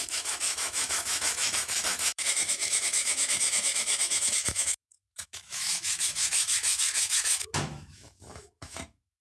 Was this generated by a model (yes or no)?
yes